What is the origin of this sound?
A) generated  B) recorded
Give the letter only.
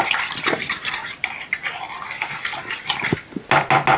B